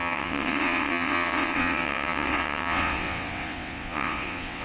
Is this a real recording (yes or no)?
no